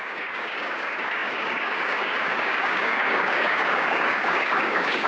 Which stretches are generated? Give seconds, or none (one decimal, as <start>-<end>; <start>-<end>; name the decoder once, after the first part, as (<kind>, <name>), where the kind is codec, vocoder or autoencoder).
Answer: 0.0-5.1 (codec, DAC)